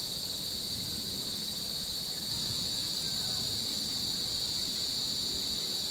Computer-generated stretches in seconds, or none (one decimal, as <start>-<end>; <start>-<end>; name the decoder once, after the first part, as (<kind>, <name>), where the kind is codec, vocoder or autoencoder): 1.4-4.7 (vocoder, BigVGAN v2)